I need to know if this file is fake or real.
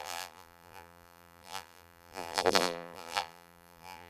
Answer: fake